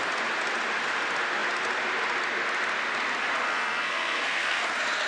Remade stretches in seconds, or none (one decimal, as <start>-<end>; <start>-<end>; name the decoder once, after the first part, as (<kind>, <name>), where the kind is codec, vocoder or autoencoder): 3.4-4.6 (codec, SNAC)